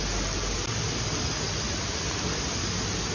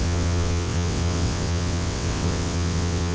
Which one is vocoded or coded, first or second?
second